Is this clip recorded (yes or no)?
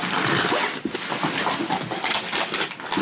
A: yes